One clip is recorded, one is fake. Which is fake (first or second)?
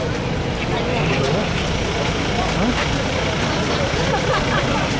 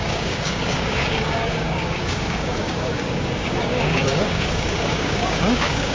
second